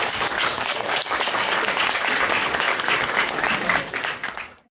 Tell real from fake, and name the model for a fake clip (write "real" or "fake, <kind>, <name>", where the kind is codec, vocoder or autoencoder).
fake, codec, DAC